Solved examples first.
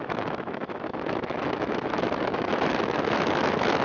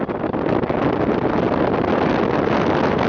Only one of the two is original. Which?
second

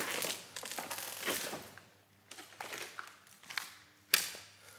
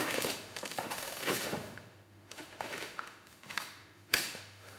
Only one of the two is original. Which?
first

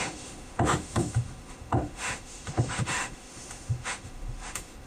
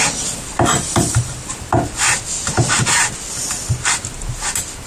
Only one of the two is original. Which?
second